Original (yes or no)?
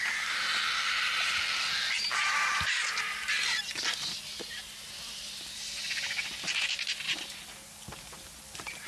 yes